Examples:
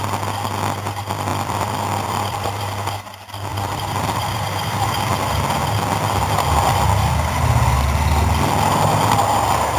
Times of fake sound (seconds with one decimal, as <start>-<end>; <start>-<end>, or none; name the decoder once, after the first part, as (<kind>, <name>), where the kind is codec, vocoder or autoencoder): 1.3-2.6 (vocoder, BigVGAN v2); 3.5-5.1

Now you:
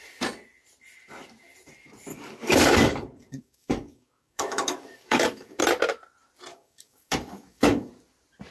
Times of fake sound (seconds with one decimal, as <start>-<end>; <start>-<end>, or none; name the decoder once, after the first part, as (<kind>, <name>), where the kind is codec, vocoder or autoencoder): 2.1-5.6 (codec, DAC); 6.5-7.9

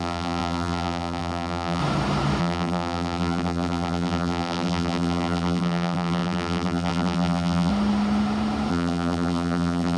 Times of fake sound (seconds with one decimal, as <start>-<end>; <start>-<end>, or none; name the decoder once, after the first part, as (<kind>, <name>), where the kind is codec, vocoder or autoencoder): 0.0-1.8 (vocoder, BigVGAN v2); 2.4-7.7; 8.7-10.0

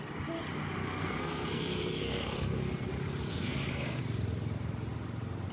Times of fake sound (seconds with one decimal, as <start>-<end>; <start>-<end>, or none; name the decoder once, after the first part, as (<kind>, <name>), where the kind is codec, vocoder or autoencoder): 0.8-2.9 (codec, SNAC); 3.3-4.0

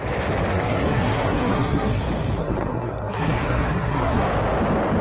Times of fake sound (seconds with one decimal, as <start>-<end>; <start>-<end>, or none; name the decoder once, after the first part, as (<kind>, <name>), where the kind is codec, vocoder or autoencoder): 0.5-2.0 (codec, SNAC); 2.4-4.2

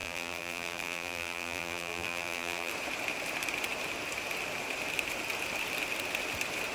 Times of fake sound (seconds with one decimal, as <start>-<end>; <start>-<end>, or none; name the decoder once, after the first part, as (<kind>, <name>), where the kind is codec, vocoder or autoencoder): 0.0-2.7 (vocoder, BigVGAN v2)

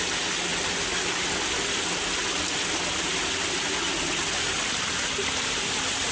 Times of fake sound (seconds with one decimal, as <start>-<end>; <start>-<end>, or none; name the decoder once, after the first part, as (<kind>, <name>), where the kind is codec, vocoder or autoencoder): none

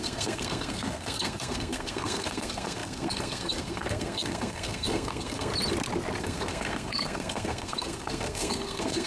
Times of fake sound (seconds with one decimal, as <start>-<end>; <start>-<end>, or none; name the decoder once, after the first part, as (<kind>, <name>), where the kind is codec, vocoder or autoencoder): 0.0-5.5 (codec, SNAC); 6.2-9.1